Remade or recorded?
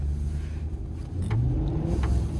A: recorded